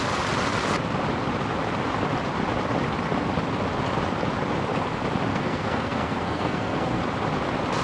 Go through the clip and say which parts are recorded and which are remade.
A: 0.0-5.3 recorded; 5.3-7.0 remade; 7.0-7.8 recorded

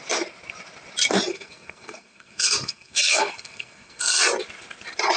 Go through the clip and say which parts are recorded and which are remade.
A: 0.0-1.3 recorded; 1.3-4.2 remade; 4.2-5.2 recorded

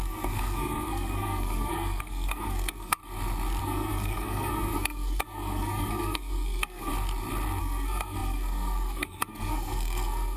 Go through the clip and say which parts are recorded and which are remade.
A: 0.0-3.0 remade; 3.0-3.6 recorded; 3.6-6.9 remade; 6.9-7.6 recorded; 7.6-10.4 remade